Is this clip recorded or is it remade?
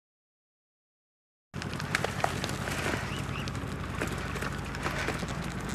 recorded